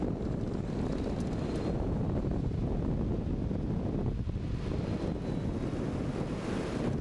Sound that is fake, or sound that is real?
real